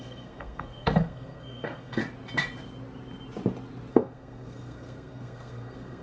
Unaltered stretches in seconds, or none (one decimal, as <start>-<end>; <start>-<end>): 2.0-3.9